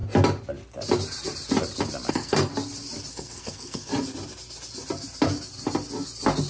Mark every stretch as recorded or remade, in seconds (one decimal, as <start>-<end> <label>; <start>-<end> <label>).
0.0-2.1 recorded; 2.1-2.5 remade; 2.5-3.1 recorded; 3.1-3.9 remade; 3.9-6.5 recorded